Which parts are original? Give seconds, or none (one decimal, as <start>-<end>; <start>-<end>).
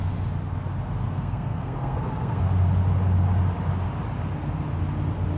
0.0-1.0; 2.4-5.4